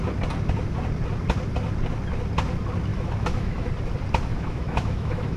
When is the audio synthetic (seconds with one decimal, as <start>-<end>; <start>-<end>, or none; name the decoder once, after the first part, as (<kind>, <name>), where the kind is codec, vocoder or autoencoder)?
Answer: 2.9-3.7 (autoencoder, DAC-VAE); 4.3-5.4